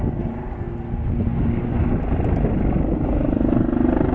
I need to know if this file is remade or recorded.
recorded